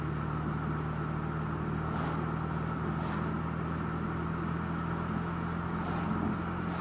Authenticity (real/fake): real